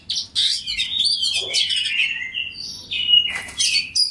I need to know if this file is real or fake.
real